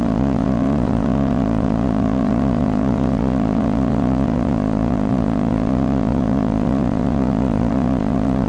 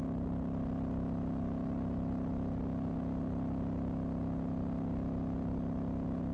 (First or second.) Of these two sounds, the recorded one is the second